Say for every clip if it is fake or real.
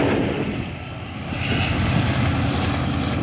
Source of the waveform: real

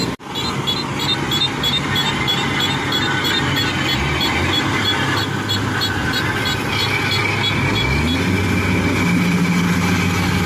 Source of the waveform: real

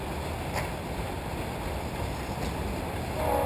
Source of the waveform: real